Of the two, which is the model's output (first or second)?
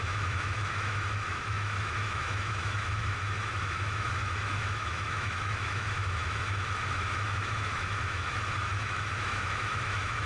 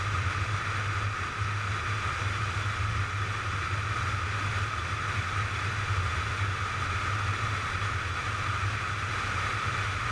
first